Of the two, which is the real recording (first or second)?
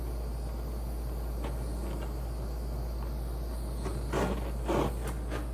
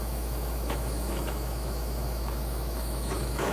first